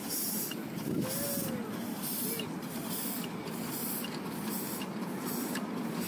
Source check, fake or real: real